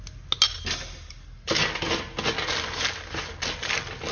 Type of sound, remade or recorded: recorded